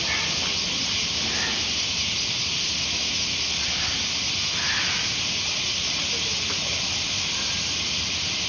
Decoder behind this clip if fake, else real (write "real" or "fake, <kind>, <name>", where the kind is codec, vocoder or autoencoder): real